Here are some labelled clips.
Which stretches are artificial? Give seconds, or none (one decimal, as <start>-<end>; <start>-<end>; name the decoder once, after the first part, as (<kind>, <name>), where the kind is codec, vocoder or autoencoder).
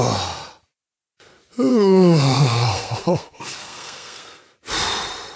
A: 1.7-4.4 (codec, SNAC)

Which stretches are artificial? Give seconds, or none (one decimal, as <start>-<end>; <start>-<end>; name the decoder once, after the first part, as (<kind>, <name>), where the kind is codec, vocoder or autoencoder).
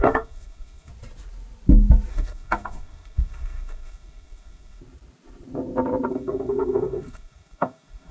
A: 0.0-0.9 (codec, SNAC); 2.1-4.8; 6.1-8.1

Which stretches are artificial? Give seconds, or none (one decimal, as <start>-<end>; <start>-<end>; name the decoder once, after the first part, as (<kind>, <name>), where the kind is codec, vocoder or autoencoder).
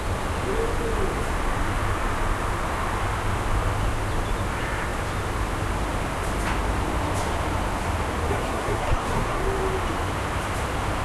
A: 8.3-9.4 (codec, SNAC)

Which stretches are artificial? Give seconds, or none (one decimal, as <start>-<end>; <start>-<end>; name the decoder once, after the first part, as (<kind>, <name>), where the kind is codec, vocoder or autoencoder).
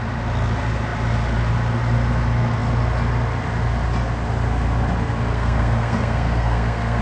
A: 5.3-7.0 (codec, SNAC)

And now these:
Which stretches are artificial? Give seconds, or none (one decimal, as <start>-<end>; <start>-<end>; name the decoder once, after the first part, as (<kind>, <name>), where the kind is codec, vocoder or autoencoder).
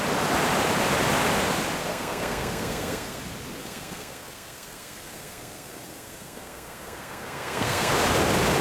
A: 1.9-3.2 (codec, SNAC); 3.6-7.9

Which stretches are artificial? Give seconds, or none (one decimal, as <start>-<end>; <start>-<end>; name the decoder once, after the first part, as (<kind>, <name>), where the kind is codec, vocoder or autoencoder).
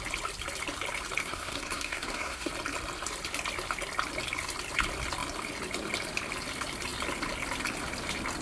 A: 1.2-2.5 (codec, SNAC)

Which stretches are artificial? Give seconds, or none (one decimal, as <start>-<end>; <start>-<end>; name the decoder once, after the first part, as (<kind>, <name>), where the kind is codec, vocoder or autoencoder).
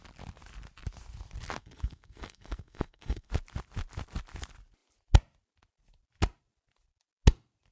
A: 1.6-3.3 (codec, SNAC)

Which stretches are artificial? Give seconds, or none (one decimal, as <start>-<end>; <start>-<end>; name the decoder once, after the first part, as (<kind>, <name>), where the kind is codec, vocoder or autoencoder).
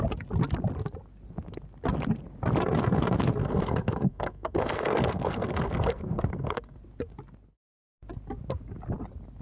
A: 3.4-6.8 (codec, SNAC)